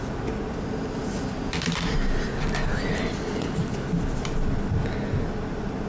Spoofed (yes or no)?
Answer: no